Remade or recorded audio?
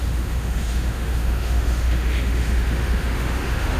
remade